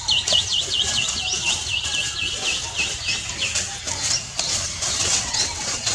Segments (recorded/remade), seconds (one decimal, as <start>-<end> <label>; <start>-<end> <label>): 0.0-5.0 recorded; 5.0-5.9 remade